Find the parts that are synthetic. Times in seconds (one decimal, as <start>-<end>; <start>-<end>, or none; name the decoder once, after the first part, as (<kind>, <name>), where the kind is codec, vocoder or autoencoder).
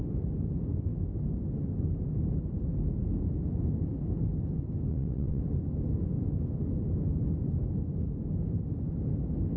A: 4.9-5.4 (vocoder, WaveNeXt)